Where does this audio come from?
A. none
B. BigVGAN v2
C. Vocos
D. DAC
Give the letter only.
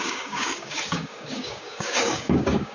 D